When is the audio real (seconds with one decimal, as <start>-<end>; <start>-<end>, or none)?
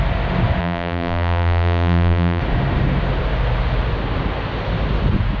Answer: 0.0-0.6; 2.4-5.4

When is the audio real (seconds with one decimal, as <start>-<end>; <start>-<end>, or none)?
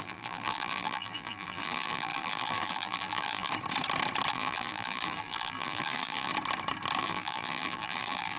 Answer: 3.5-4.3; 6.3-7.0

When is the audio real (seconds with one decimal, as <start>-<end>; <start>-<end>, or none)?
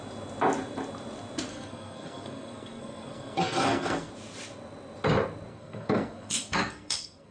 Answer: 0.0-1.5; 4.1-5.5